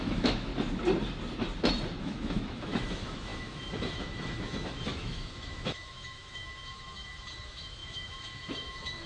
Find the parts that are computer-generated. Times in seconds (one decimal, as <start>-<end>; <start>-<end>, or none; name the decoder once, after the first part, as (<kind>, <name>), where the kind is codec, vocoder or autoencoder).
0.0-0.5 (autoencoder, DAC-VAE); 2.0-9.1